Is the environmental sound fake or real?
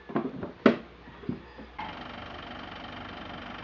real